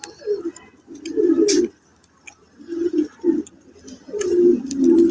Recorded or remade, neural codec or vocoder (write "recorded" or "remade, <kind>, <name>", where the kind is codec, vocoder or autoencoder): recorded